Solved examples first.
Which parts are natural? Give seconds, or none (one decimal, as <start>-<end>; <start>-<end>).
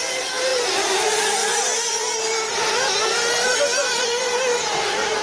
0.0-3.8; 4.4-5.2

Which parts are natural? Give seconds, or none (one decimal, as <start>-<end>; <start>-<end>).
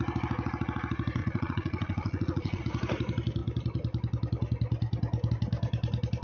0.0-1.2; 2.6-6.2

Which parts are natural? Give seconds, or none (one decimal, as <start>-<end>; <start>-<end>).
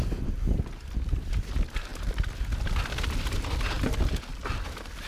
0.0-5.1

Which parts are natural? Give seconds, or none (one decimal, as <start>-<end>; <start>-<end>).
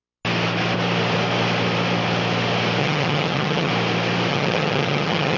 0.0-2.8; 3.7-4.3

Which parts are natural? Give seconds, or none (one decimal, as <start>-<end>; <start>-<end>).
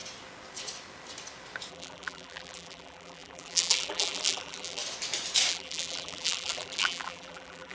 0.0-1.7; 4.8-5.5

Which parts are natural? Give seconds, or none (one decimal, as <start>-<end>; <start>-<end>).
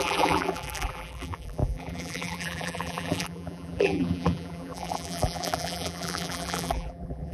none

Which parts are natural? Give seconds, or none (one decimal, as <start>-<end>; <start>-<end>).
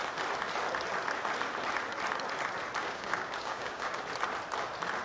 0.0-2.8; 4.0-5.0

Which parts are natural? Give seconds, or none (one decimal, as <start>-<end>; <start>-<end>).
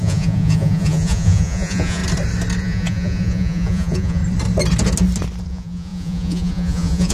2.0-2.6; 4.2-5.5